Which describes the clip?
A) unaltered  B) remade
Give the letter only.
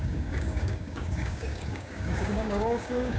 B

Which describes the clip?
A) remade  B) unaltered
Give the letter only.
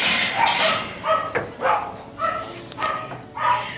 B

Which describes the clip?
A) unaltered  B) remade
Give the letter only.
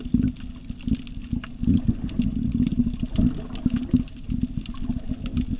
A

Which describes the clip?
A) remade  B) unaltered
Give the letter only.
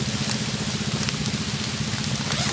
B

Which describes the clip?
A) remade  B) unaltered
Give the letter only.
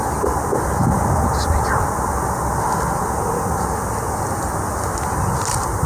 B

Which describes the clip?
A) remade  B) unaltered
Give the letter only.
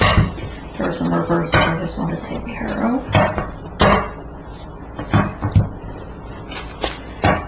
B